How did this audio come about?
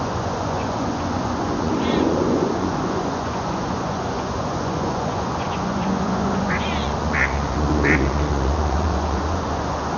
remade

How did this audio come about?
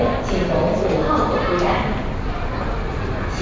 recorded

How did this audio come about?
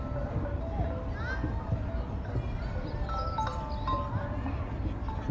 recorded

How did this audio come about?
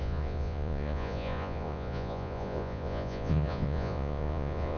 remade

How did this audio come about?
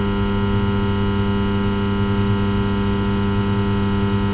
recorded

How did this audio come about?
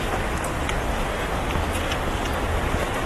recorded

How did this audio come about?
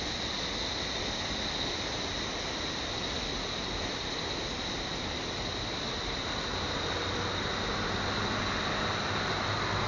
recorded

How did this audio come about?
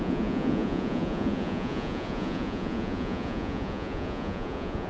remade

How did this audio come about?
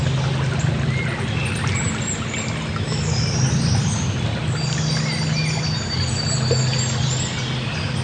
recorded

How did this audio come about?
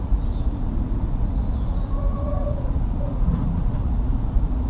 remade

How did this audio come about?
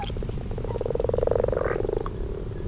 recorded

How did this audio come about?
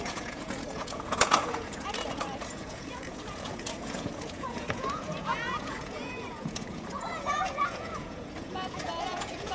remade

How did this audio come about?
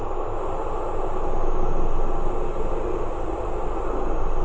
recorded